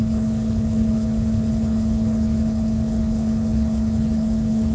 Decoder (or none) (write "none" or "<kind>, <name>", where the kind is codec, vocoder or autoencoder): codec, HILCodec